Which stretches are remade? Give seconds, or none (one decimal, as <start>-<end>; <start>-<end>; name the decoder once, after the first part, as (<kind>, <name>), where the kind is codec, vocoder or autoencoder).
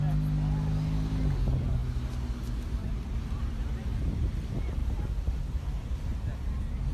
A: 2.8-4.3 (vocoder, BigVGAN v2)